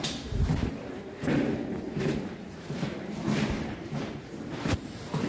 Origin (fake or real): fake